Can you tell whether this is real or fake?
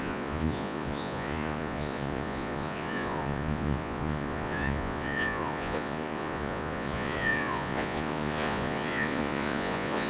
fake